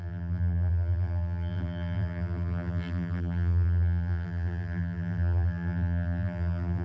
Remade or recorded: remade